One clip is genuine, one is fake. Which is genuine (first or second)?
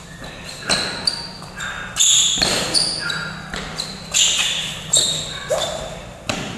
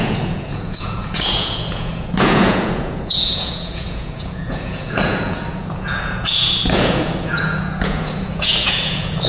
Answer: first